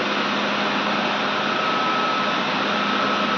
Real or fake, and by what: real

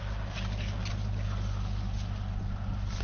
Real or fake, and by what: real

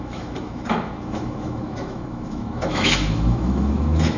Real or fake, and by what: fake, autoencoder, DAC-VAE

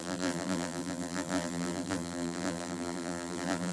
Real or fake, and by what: fake, vocoder, BigVGAN v2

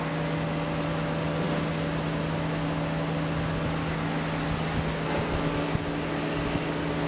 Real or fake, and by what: real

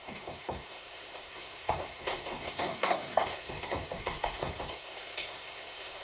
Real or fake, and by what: fake, codec, SNAC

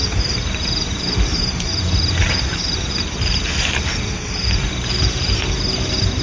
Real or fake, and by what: fake, vocoder, BigVGAN v2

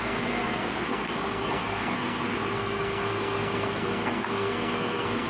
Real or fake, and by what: fake, codec, SNAC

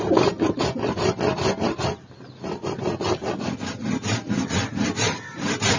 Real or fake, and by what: real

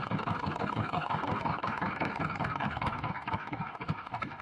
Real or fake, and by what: fake, codec, DAC